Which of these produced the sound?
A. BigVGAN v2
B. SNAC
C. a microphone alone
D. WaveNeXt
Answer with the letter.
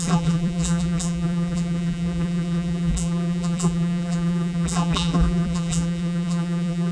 A